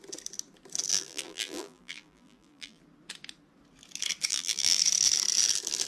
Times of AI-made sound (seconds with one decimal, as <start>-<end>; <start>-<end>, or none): 0.9-2.8; 4.3-4.8